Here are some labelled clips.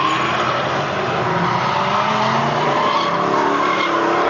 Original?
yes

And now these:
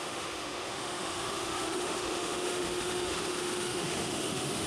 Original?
no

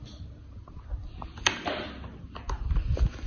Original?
yes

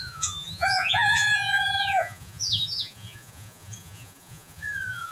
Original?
no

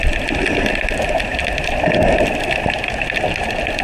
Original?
yes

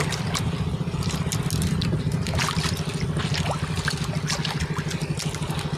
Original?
yes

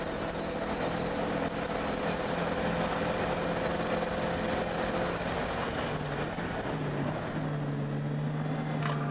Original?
yes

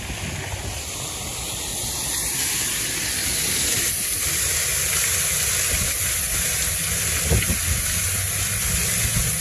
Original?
yes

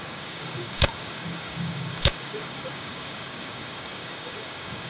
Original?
no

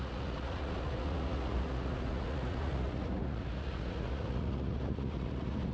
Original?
no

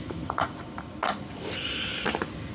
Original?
yes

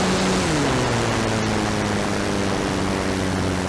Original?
yes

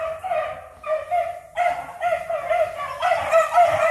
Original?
yes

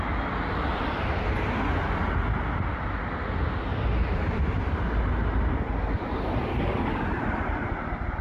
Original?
yes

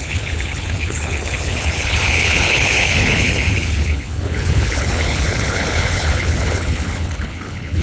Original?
no